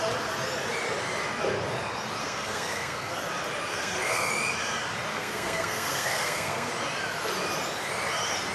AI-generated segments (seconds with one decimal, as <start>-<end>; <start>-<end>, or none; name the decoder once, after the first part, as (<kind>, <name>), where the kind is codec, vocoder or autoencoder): 2.2-3.1 (codec, SNAC); 3.7-4.3; 5.1-6.7